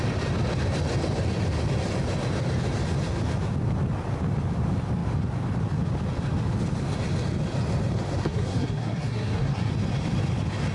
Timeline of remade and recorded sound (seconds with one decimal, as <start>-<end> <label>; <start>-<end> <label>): 0.0-8.2 recorded; 8.2-9.7 remade; 9.7-10.7 recorded